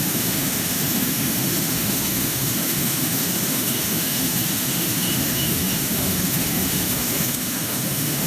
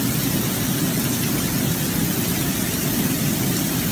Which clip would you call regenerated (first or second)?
first